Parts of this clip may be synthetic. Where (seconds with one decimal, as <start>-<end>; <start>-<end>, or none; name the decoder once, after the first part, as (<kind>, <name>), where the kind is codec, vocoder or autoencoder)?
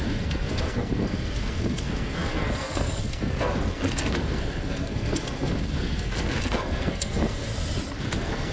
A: 0.0-7.5 (codec, SNAC); 8.0-8.5